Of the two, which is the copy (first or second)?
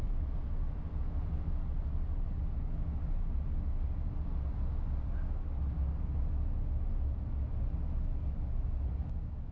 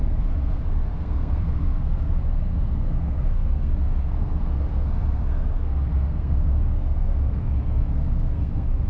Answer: second